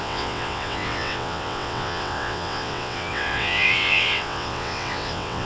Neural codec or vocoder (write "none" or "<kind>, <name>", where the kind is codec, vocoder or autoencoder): vocoder, WaveNeXt